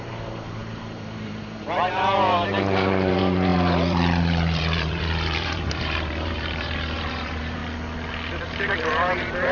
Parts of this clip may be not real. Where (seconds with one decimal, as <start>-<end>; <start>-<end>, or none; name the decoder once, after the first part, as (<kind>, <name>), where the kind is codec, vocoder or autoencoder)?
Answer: 0.0-7.6 (vocoder, BigVGAN v2); 8.3-9.5